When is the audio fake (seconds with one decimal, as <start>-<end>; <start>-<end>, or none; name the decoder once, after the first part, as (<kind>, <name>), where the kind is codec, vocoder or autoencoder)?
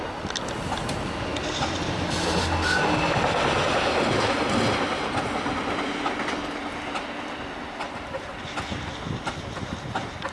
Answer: 6.4-7.1 (vocoder, BigVGAN v2)